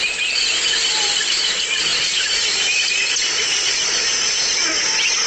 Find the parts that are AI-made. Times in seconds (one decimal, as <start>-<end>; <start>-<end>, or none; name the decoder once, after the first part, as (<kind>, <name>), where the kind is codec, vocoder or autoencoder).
none